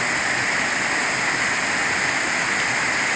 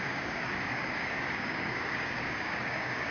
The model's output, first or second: second